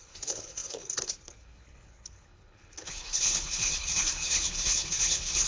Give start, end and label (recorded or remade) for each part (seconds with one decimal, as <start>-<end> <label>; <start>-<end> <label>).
0.0-5.5 remade